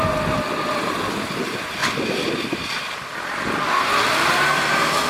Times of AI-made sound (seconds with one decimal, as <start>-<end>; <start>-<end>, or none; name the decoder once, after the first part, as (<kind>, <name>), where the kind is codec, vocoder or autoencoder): none